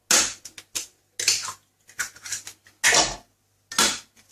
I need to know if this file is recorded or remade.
recorded